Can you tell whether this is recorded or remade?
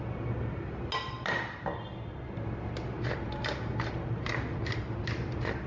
recorded